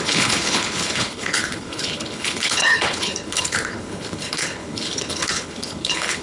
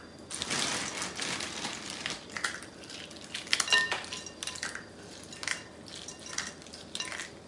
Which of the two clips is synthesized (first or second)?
first